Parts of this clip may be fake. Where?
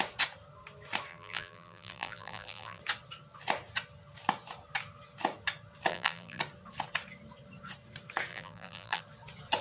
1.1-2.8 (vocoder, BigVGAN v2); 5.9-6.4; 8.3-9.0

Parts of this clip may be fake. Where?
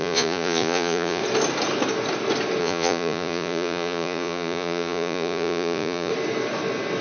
0.0-1.2 (vocoder, Vocos); 2.6-6.1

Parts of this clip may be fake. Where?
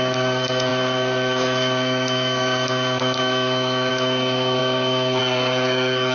0.0-6.1 (codec, SNAC)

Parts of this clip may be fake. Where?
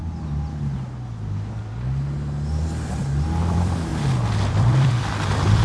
3.4-3.9 (vocoder, BigVGAN v2); 4.5-5.6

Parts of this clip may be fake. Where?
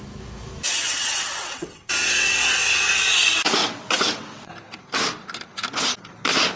0.8-3.0 (vocoder, WaveNeXt); 3.6-4.5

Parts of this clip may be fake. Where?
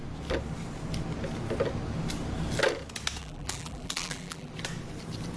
3.2-4.5 (vocoder, BigVGAN v2)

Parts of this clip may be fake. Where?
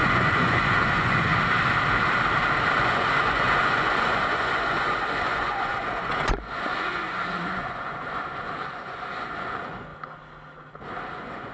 0.0-1.3 (vocoder, Vocos); 2.8-9.9; 11.1-11.5